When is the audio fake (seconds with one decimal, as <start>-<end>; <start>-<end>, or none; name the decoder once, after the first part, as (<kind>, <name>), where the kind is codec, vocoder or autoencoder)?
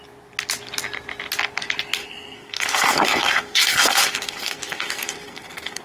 2.0-5.8 (codec, SNAC)